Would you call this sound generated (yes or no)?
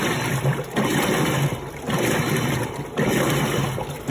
no